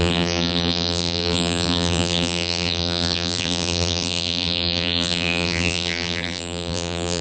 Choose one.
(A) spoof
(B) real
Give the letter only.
A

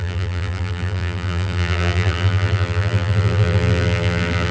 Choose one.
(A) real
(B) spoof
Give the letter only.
B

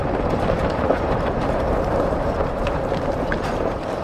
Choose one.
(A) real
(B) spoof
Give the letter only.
B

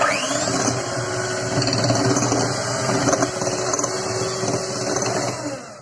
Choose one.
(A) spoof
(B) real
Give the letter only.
B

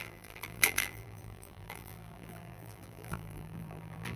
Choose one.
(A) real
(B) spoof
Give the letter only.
B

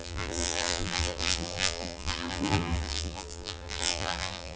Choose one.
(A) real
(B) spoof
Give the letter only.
B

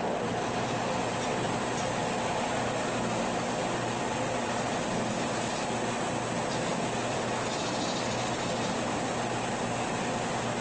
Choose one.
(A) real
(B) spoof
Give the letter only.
A